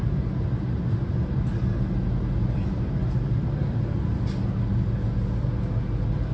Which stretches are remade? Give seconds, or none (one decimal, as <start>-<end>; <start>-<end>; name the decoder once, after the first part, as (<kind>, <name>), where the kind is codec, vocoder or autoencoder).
none